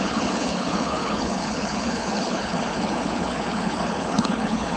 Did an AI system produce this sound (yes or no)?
yes